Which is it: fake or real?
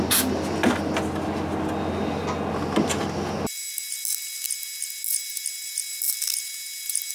real